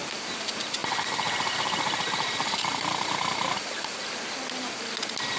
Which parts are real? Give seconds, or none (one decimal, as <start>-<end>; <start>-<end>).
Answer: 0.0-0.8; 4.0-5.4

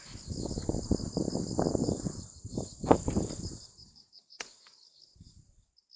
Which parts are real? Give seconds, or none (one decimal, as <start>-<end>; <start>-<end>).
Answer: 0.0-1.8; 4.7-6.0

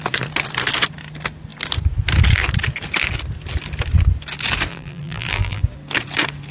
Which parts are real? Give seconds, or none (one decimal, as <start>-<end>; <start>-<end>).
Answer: 0.0-4.7; 5.6-6.5

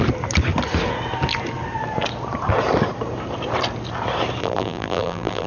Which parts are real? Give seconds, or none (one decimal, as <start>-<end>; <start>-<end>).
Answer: 0.0-4.4

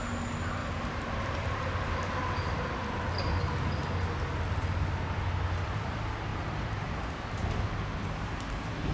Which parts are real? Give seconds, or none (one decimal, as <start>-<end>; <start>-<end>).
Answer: 0.0-0.6; 1.8-6.3; 6.9-8.9